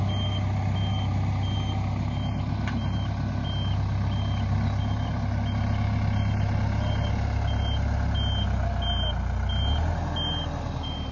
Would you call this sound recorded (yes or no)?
yes